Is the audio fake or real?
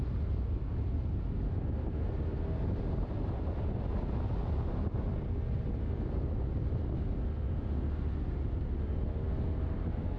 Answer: real